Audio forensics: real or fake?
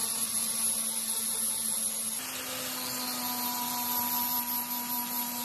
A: real